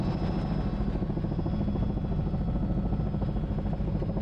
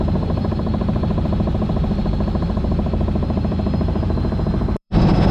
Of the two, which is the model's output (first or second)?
second